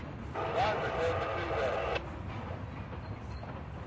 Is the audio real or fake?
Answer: real